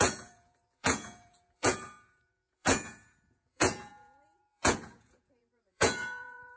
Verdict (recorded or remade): remade